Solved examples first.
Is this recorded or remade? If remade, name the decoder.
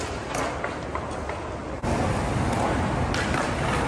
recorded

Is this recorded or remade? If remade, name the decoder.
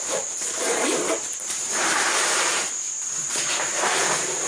remade, vocoder, BigVGAN v2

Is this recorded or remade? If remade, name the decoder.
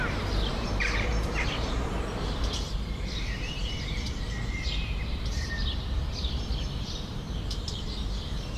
remade, vocoder, BigVGAN v2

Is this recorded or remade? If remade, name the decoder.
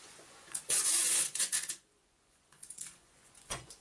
remade, vocoder, Vocos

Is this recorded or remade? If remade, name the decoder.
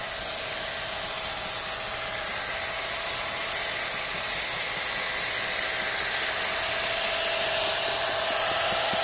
recorded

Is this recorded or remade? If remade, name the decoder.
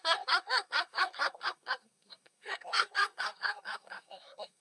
remade, codec, SNAC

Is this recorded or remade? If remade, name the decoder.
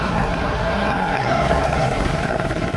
remade, codec, SNAC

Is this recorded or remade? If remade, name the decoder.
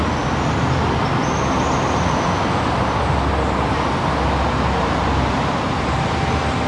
recorded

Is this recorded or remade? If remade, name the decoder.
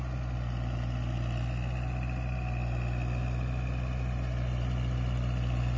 recorded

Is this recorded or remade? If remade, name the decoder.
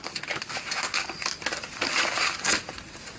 recorded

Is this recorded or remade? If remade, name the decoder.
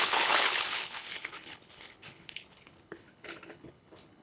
remade, codec, HILCodec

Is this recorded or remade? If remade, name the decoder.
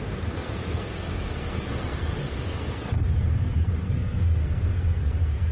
remade, codec, SNAC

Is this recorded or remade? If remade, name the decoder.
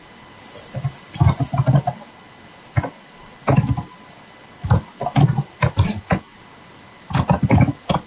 recorded